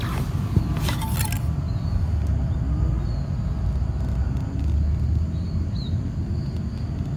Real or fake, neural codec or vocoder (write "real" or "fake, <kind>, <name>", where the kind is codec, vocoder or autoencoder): real